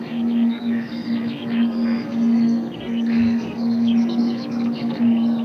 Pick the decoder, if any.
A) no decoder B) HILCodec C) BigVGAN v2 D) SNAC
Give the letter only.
D